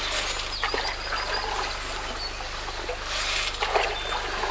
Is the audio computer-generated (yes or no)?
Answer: no